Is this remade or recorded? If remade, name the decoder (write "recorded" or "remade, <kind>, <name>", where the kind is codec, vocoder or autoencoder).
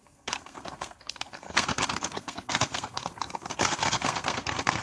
remade, codec, SNAC